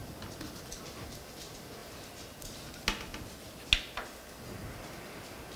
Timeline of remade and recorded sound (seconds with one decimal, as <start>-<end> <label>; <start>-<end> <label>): 0.0-5.6 recorded